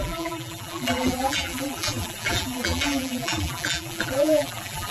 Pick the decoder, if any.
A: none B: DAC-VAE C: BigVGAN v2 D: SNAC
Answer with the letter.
C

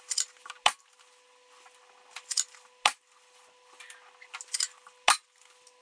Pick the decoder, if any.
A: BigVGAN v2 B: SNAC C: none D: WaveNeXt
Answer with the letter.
C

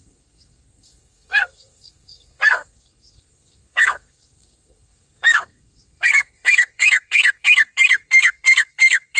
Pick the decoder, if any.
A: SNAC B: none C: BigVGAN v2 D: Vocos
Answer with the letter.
A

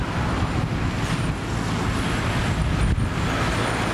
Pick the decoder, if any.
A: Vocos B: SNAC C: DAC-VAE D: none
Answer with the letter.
D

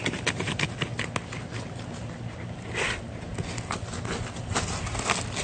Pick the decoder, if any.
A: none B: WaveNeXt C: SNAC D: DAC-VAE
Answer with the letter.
A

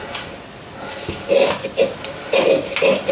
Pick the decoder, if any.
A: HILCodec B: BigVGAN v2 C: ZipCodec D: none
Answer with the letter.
D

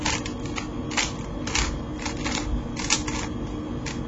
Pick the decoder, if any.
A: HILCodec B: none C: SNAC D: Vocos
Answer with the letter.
B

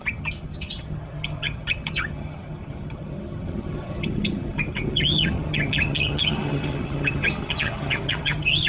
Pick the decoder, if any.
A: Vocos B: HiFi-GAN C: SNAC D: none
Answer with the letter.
B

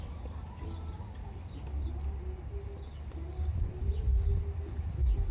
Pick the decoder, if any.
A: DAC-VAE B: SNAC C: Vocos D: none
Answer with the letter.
D